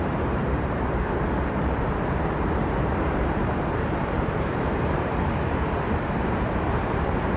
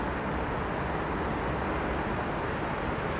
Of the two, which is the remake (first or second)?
first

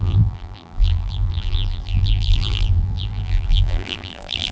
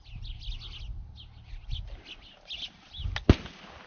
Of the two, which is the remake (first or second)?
first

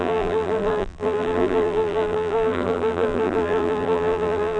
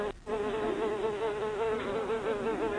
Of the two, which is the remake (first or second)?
first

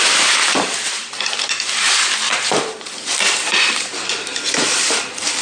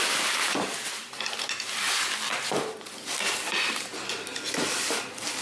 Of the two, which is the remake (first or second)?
first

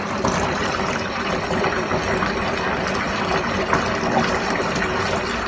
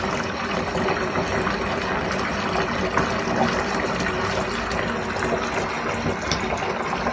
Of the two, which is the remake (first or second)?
first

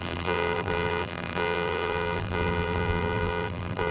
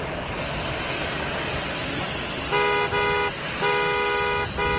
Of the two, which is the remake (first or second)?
first